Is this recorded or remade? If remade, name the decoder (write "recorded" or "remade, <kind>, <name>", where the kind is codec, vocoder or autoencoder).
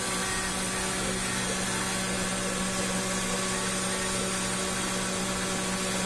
recorded